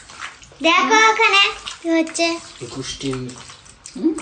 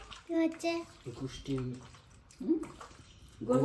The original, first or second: first